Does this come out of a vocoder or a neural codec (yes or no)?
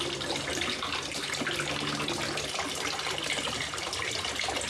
no